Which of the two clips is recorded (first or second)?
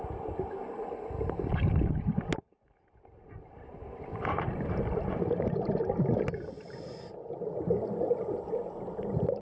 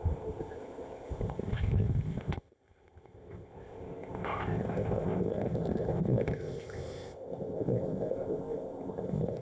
first